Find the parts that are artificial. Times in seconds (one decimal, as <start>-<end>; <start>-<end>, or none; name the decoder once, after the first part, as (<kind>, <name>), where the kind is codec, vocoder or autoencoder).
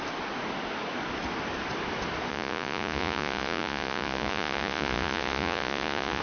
2.3-6.2 (vocoder, Vocos)